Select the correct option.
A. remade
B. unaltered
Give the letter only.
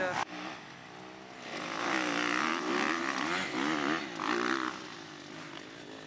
B